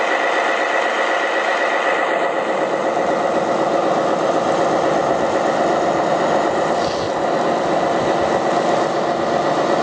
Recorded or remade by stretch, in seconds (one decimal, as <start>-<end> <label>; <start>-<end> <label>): 0.0-9.8 recorded